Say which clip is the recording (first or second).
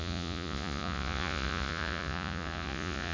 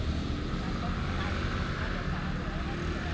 second